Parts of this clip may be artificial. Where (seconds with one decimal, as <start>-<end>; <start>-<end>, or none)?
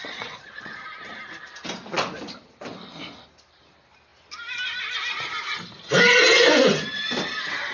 0.0-0.9